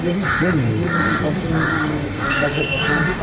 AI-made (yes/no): yes